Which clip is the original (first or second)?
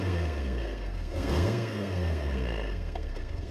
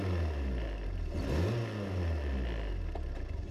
second